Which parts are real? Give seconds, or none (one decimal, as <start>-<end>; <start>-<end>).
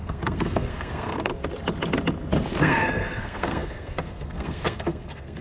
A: 1.3-2.6